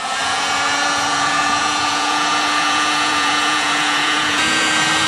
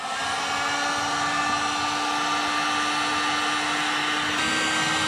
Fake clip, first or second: first